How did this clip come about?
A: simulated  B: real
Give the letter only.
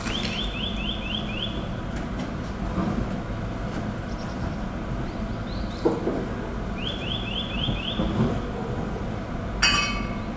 B